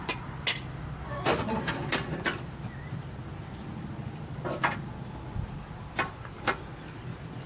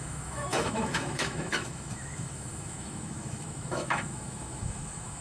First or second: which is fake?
second